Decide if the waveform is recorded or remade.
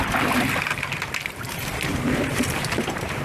remade